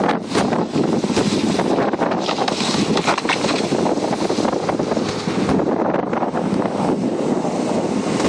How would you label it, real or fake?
real